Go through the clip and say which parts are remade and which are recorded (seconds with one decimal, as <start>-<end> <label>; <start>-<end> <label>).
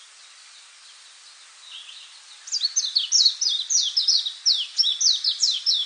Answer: 0.0-5.9 recorded